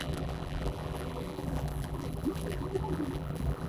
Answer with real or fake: fake